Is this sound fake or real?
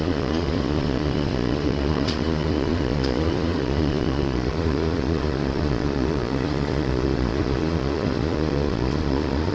fake